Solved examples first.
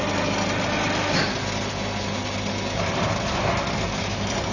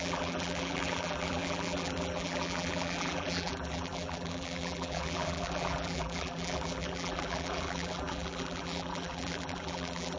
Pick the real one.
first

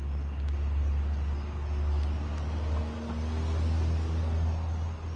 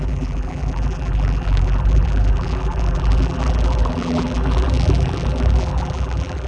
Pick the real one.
first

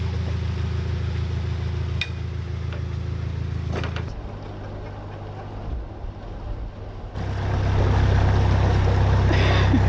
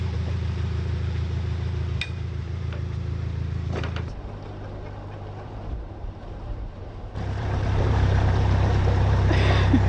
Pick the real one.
first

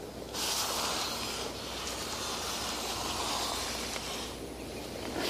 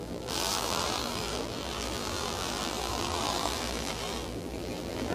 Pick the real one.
first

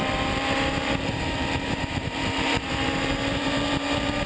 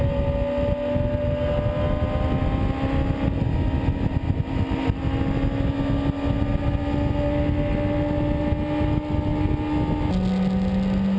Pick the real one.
second